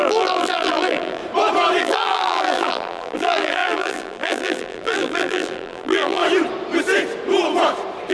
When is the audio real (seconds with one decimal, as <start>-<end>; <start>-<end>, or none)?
1.2-1.8; 6.2-8.1